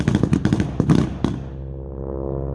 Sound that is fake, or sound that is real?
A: real